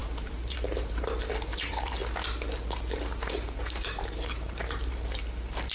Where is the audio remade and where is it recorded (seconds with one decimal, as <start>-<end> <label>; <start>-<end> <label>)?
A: 0.0-2.0 remade; 2.0-3.3 recorded; 3.3-5.7 remade

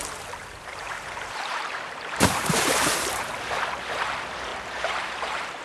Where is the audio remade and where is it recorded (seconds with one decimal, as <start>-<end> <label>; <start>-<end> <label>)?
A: 0.0-0.7 recorded; 0.7-3.3 remade; 3.3-4.5 recorded; 4.5-5.6 remade

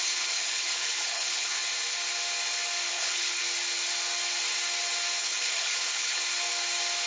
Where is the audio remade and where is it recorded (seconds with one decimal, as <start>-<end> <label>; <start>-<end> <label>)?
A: 0.0-1.6 remade; 1.6-2.9 recorded; 2.9-3.4 remade; 3.4-5.2 recorded; 5.2-6.2 remade; 6.2-7.1 recorded

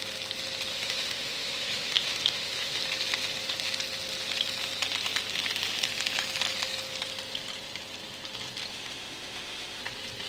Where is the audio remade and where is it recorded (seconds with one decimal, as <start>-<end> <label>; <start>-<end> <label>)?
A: 0.0-0.7 recorded; 0.7-2.8 remade; 2.8-8.7 recorded; 8.7-9.8 remade; 9.8-10.3 recorded